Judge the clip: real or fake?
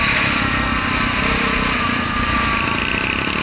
real